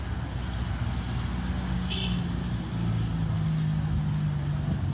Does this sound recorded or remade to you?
recorded